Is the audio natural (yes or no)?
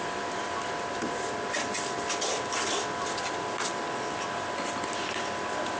yes